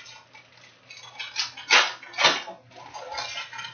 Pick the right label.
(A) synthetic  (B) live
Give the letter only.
B